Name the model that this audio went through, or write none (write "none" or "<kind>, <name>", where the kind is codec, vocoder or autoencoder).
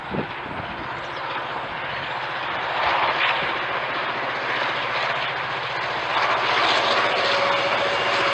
none